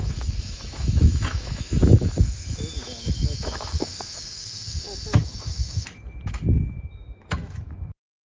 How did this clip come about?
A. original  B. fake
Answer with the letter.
B